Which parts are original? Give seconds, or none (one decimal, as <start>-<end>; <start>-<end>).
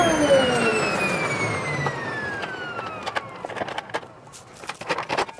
0.0-5.4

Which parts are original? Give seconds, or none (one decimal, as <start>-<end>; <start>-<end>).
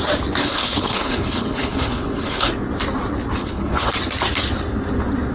0.0-0.4; 2.5-3.4; 3.9-5.3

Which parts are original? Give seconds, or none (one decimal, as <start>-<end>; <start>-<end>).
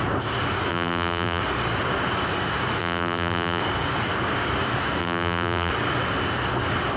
0.0-0.7; 1.4-2.8; 3.6-5.0; 5.7-7.0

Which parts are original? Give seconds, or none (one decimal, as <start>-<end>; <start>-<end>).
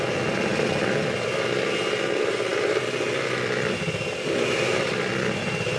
0.0-2.5; 5.1-5.8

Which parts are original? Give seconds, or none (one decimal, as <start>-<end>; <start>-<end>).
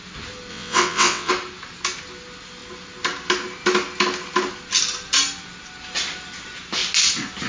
0.0-0.5; 1.3-7.5